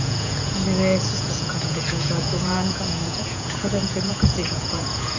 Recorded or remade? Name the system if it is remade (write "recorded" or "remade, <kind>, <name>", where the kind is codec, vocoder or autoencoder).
remade, vocoder, Vocos